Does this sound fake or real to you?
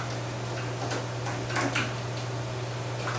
real